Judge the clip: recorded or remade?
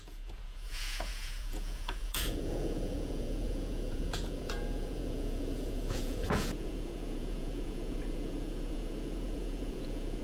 remade